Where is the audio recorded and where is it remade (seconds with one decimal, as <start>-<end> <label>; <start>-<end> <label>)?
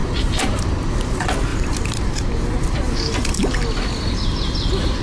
0.0-0.6 remade; 0.6-1.5 recorded; 1.5-2.3 remade; 2.3-5.0 recorded